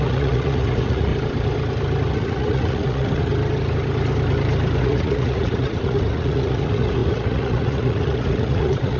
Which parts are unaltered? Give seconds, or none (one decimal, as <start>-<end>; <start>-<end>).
1.1-2.1; 3.3-4.8